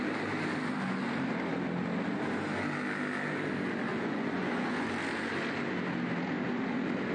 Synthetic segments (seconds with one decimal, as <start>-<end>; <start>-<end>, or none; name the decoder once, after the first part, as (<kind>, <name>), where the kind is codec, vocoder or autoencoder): 3.9-4.9 (vocoder, Vocos)